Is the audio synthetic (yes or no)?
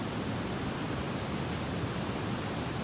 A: no